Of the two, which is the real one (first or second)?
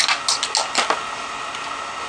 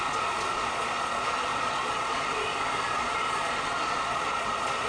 first